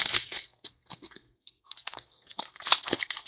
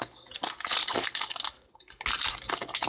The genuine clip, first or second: second